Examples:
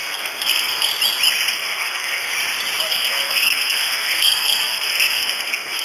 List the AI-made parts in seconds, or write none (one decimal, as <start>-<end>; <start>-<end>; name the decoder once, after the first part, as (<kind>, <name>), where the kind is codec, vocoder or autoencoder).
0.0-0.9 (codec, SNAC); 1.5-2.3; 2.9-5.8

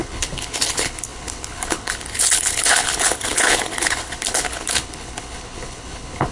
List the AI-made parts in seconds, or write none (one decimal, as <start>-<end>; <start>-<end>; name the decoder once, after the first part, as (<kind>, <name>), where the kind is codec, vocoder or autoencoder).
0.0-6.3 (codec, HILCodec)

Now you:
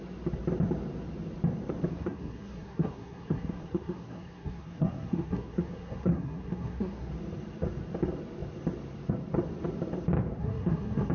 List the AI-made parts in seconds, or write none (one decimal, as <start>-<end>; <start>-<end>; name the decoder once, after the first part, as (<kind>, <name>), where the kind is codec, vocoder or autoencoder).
1.9-7.1 (codec, SNAC); 10.4-11.1

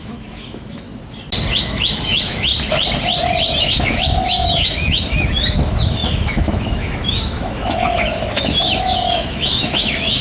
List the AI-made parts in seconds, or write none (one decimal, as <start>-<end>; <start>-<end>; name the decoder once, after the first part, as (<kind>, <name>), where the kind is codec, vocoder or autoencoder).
0.0-0.9 (autoencoder, DAC-VAE); 1.6-2.5; 3.6-10.2